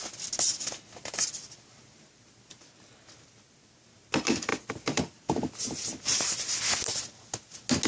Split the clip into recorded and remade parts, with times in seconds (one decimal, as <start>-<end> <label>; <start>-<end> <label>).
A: 0.0-7.9 recorded